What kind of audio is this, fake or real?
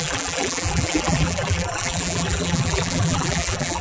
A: fake